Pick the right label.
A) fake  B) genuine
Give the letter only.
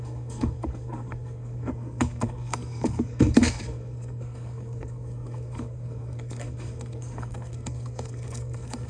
A